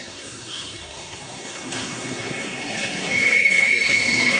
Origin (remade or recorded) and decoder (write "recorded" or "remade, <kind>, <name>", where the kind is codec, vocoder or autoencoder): remade, codec, SNAC